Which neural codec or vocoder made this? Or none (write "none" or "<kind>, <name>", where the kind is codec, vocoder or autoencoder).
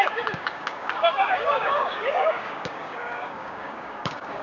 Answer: codec, DAC